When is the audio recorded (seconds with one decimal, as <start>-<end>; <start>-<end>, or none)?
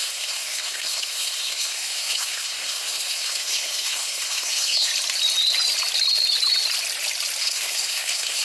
4.9-7.4